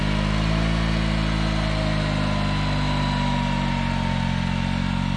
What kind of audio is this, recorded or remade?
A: recorded